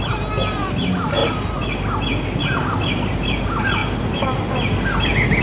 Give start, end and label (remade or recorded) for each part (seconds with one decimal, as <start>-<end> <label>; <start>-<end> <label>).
0.0-5.4 recorded